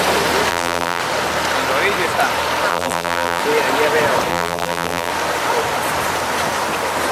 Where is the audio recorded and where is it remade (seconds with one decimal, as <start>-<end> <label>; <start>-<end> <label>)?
0.0-0.5 recorded; 0.5-1.0 remade; 1.0-2.7 recorded; 2.7-3.4 remade; 3.4-4.3 recorded; 4.3-5.1 remade; 5.1-7.1 recorded